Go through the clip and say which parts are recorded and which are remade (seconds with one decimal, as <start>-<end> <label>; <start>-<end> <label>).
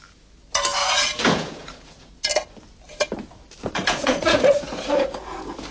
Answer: 0.0-0.8 recorded; 0.8-2.3 remade; 2.3-3.8 recorded; 3.8-5.7 remade